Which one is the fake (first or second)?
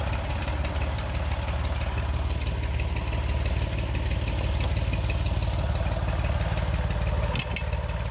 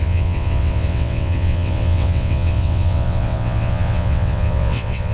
second